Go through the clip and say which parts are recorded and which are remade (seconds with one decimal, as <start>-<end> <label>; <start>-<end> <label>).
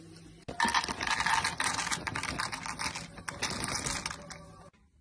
0.0-5.0 recorded